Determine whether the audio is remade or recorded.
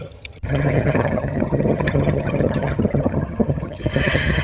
remade